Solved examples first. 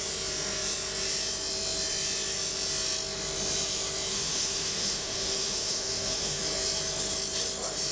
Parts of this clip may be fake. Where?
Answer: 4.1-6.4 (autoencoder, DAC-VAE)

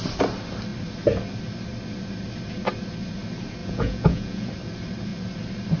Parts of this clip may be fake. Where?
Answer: 3.6-4.5 (vocoder, Vocos)

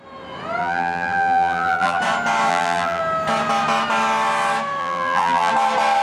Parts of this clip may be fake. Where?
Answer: 0.6-2.0 (vocoder, BigVGAN v2); 2.5-3.0; 4.8-5.5

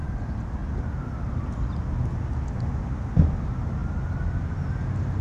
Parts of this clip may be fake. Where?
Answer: none